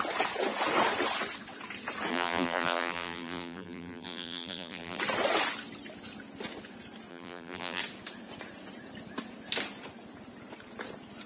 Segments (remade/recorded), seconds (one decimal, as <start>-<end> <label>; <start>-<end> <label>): 0.0-2.1 recorded; 2.1-5.0 remade; 5.0-7.1 recorded; 7.1-7.8 remade; 7.8-11.3 recorded